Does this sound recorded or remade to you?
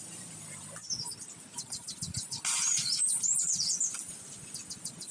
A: recorded